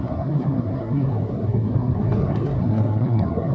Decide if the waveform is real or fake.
fake